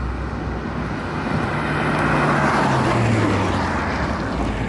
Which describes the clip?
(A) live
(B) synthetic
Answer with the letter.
A